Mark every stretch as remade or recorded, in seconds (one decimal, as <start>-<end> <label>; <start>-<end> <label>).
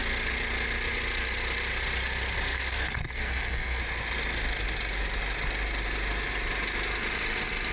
0.0-2.5 recorded; 2.5-3.8 remade; 3.8-7.7 recorded